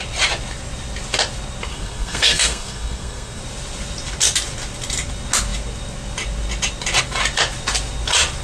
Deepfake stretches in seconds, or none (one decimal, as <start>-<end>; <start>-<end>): 1.7-3.4